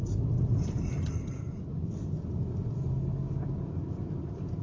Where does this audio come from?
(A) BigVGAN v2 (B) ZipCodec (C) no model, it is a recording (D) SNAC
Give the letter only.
A